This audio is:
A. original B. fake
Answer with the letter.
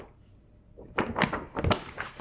A